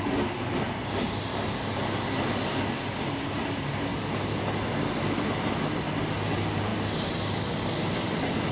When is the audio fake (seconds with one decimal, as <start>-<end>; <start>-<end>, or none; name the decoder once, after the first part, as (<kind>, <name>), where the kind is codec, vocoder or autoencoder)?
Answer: none